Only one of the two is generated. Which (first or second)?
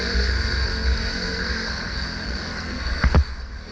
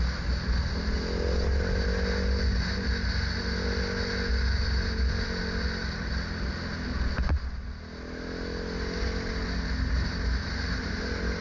first